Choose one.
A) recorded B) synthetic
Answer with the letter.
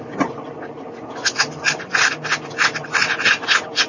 A